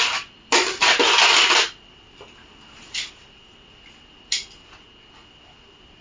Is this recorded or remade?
recorded